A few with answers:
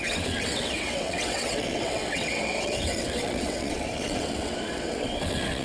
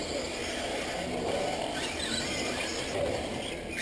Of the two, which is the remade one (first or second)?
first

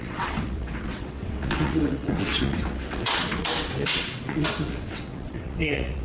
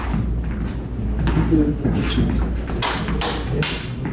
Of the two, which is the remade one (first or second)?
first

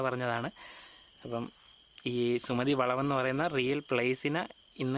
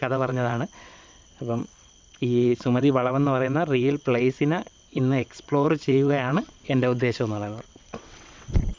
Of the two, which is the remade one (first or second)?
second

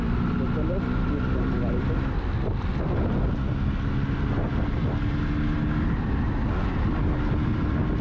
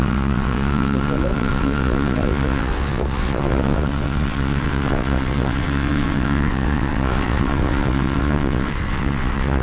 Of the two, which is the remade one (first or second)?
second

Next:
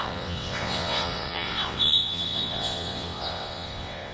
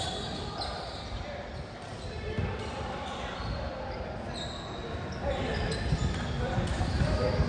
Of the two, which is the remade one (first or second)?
first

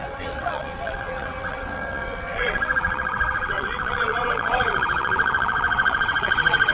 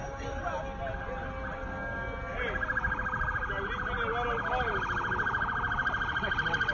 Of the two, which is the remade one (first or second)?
first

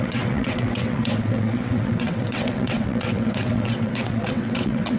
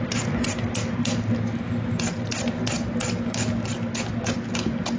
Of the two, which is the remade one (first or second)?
first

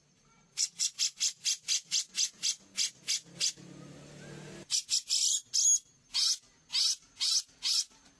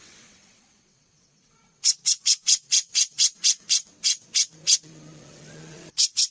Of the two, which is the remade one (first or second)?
second